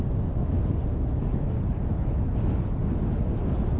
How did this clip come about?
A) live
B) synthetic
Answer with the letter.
A